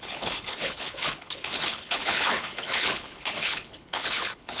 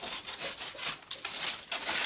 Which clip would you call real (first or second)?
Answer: second